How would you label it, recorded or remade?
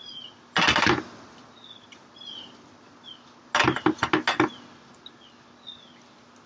recorded